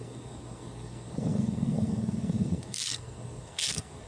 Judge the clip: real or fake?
fake